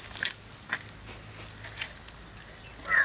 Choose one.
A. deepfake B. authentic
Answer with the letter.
B